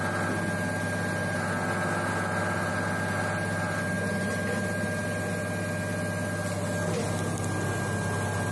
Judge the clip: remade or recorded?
recorded